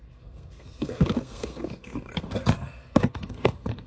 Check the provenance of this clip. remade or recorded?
remade